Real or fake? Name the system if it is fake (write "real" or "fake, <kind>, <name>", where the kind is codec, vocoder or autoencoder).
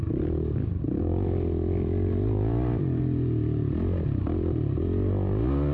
real